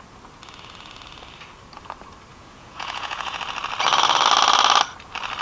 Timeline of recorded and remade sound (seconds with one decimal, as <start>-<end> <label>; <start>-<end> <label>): 0.0-2.3 recorded; 2.3-3.4 remade; 3.4-5.4 recorded